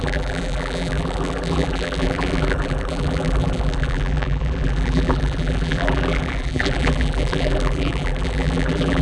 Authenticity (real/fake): fake